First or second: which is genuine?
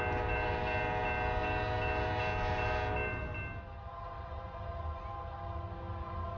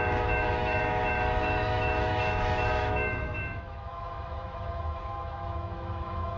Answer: first